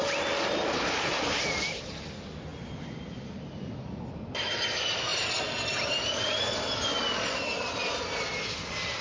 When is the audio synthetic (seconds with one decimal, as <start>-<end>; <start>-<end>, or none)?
none